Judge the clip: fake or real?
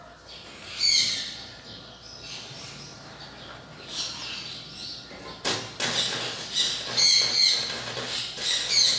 real